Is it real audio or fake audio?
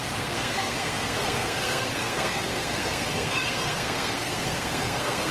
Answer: fake